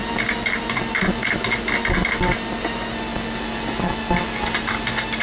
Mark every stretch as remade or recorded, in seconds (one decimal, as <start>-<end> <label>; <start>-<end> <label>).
0.0-5.2 recorded